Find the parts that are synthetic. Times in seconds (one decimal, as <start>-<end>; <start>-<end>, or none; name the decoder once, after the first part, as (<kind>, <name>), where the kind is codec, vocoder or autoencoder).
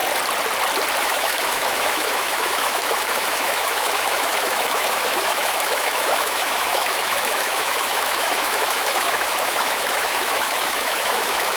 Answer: 1.0-11.6 (autoencoder, DAC-VAE)